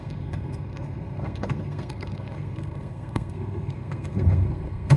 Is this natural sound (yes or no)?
no